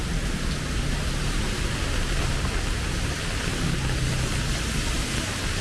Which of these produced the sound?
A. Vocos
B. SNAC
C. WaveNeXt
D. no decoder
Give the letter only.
D